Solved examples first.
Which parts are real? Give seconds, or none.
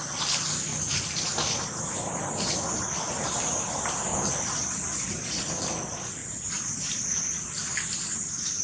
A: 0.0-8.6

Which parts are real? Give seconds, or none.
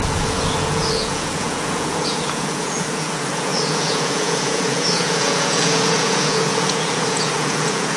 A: none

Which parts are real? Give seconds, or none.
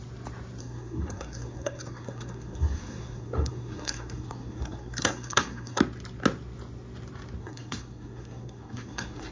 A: 0.0-0.6; 5.8-7.4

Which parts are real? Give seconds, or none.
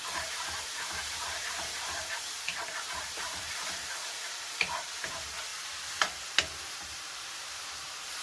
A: 5.5-6.7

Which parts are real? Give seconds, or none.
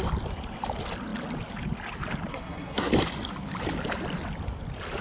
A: 0.0-2.3; 2.9-5.0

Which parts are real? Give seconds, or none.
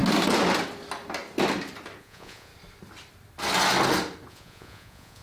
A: 0.0-2.0; 2.5-4.3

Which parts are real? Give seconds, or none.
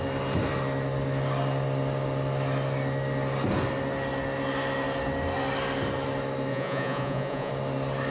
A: 0.0-6.5; 7.5-8.1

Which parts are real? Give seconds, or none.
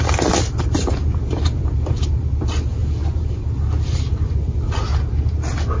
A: 2.8-3.3; 4.9-5.8